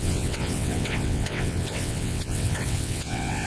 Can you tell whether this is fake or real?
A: fake